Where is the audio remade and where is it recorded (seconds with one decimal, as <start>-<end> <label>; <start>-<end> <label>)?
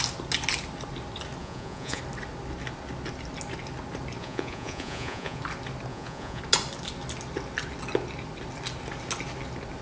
0.0-1.4 recorded; 1.4-2.0 remade; 2.0-4.2 recorded; 4.2-5.4 remade; 5.4-5.9 recorded; 5.9-6.4 remade; 6.4-9.8 recorded